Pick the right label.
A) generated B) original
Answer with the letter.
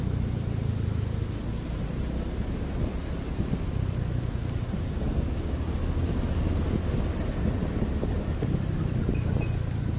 B